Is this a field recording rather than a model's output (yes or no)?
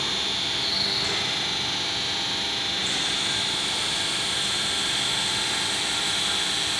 yes